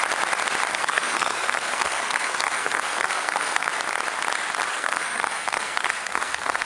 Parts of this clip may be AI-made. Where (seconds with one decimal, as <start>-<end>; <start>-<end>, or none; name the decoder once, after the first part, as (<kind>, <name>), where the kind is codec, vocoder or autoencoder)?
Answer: 0.7-3.7 (codec, SNAC); 4.7-6.7

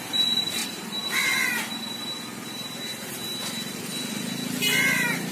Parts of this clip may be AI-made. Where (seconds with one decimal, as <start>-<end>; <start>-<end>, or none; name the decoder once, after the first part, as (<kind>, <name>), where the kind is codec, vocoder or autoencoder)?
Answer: none

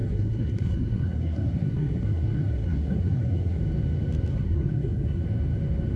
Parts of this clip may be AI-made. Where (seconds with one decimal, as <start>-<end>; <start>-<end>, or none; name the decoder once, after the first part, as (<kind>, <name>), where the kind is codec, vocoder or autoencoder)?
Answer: 0.0-3.6 (codec, SNAC); 4.3-5.2

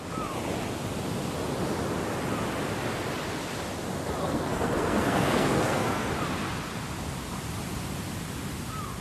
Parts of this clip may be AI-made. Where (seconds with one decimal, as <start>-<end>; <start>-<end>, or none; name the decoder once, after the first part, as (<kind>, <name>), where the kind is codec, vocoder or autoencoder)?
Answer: 4.2-6.1 (codec, SNAC)

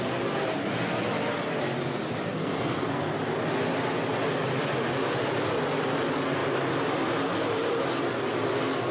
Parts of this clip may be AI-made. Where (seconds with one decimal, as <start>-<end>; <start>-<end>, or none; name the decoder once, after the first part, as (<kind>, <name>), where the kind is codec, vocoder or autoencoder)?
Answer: 2.3-3.0 (codec, SNAC)